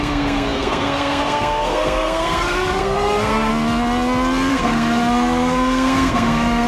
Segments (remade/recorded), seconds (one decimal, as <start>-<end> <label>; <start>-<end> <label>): 0.0-3.5 remade; 3.5-4.5 recorded; 4.5-6.7 remade